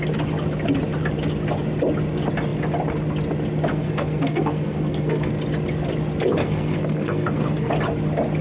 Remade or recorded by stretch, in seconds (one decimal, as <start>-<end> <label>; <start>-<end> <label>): 0.0-3.7 recorded; 3.7-5.3 remade; 5.3-6.4 recorded; 6.4-7.7 remade; 7.7-8.4 recorded